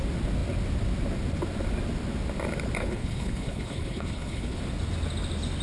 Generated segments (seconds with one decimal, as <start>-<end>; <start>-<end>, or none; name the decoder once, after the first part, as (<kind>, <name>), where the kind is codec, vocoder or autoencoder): 2.8-4.6 (codec, HILCodec)